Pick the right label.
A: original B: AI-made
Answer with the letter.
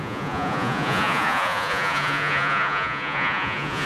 B